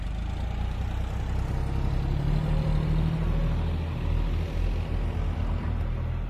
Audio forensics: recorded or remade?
recorded